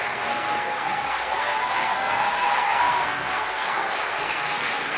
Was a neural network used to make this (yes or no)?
yes